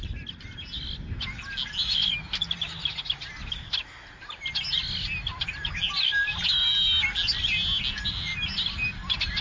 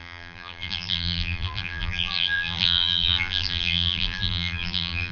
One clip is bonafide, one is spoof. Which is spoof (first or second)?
second